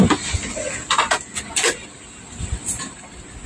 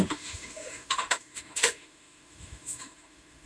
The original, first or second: first